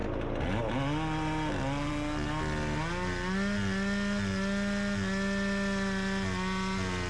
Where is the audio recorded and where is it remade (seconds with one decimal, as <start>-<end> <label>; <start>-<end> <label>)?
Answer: 0.0-7.1 recorded

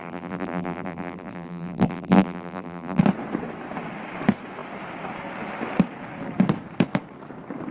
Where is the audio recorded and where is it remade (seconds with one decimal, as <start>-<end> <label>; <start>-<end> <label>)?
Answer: 0.0-3.0 remade; 3.0-7.7 recorded

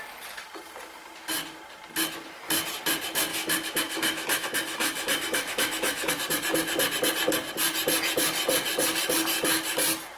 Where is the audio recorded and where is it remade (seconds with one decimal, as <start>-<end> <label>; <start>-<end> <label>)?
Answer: 0.0-3.3 recorded; 3.3-6.1 remade; 6.1-10.2 recorded

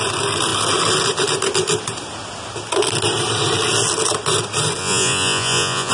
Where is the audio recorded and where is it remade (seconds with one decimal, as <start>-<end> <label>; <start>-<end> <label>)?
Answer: 0.0-4.8 recorded; 4.8-5.9 remade